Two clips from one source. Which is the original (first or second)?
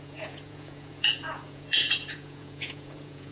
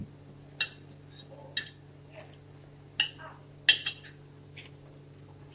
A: second